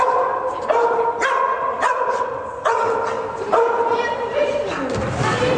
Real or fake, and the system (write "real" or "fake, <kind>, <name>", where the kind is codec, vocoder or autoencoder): real